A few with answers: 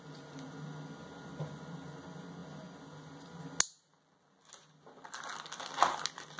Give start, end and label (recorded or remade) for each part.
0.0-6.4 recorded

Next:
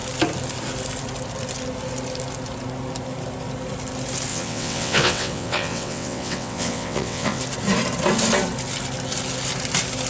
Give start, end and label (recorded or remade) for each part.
0.0-4.3 recorded; 4.3-7.4 remade; 7.4-10.1 recorded